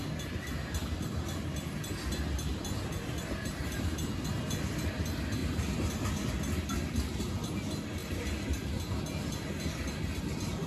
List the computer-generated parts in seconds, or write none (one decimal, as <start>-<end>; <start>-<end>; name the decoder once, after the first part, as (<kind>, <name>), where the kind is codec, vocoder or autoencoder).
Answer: none